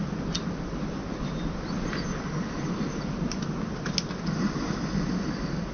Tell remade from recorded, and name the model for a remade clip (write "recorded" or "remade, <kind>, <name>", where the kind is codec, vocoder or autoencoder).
recorded